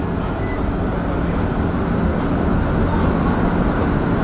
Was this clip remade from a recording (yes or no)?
no